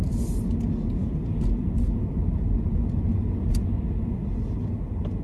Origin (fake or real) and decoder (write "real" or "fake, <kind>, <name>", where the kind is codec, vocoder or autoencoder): real